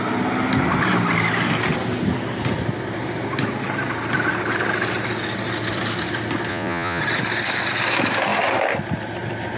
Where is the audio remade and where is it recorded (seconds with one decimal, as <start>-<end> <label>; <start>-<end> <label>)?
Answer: 0.0-6.5 recorded; 6.5-7.0 remade; 7.0-9.6 recorded

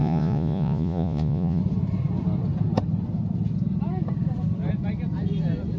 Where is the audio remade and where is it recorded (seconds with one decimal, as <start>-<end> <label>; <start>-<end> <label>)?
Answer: 0.0-1.6 remade; 1.6-5.8 recorded

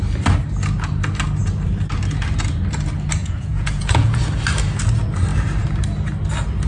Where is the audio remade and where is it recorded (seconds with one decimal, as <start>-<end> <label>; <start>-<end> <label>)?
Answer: 0.0-3.2 recorded; 3.2-4.2 remade; 4.2-6.7 recorded

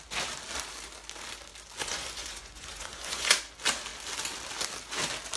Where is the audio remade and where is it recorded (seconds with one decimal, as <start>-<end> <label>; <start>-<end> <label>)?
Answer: 0.0-1.8 recorded; 1.8-3.3 remade; 3.3-5.4 recorded